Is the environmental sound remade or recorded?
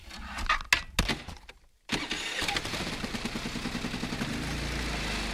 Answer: recorded